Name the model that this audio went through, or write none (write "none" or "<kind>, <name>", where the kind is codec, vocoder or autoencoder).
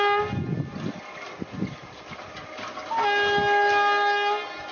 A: none